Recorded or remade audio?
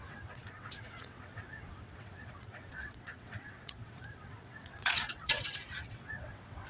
remade